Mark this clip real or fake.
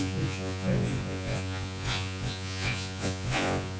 fake